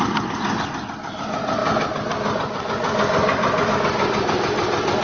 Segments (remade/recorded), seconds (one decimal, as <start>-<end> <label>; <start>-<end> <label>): 0.0-5.0 recorded